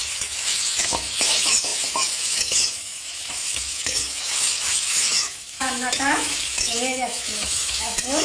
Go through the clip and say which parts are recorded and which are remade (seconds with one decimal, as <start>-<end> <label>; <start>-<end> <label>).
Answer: 0.0-8.2 remade